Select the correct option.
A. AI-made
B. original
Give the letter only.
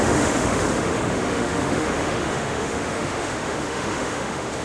A